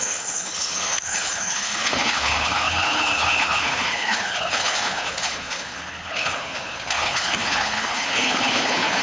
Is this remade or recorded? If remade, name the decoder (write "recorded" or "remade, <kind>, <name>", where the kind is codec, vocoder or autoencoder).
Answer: remade, codec, HILCodec